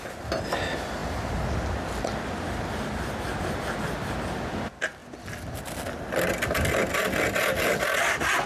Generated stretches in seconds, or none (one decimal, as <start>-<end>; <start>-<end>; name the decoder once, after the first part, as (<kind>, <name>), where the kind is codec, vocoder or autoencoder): 6.8-7.5 (vocoder, BigVGAN v2)